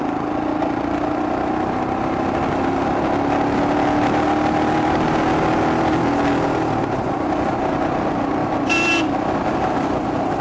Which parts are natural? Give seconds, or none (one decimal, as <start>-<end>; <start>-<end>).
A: 0.0-0.5; 1.5-8.4; 8.9-10.4

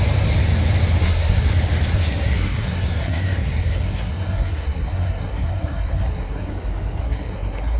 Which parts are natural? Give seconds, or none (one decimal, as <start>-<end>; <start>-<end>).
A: 0.0-1.0; 1.5-1.9; 6.5-7.0

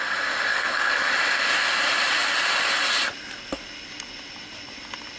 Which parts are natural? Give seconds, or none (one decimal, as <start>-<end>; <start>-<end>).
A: 0.0-0.5; 1.1-5.2

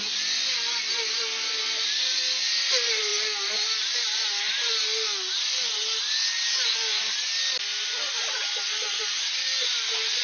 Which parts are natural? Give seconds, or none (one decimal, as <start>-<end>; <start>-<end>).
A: 0.0-10.2

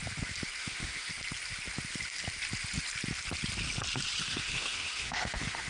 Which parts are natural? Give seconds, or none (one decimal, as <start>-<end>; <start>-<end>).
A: 0.0-0.6; 1.1-4.2

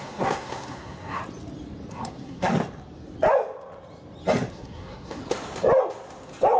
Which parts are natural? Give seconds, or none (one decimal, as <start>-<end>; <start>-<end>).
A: 1.2-1.9; 2.5-4.5; 5.2-6.6

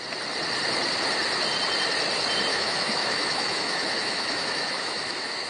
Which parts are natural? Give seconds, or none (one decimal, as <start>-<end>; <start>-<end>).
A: 0.0-2.5

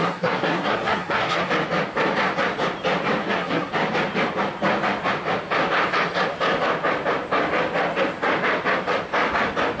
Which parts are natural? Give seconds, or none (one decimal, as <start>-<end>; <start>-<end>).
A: 1.5-3.2; 3.7-9.8